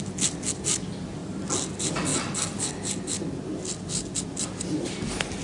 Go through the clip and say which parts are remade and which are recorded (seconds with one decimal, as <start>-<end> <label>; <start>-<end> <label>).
0.0-5.4 recorded